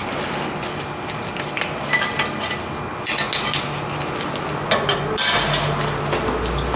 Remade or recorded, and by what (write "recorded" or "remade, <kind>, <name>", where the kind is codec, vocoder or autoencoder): recorded